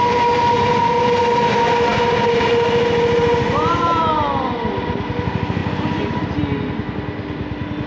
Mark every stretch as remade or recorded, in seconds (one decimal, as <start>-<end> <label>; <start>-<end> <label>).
0.0-7.9 recorded